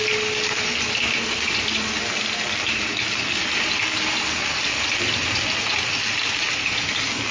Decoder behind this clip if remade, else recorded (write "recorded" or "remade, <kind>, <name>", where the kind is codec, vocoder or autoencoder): recorded